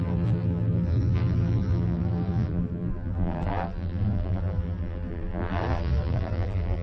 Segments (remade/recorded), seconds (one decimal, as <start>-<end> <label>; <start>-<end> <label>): 0.0-6.8 remade